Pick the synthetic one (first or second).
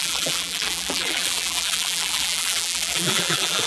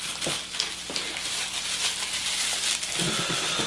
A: first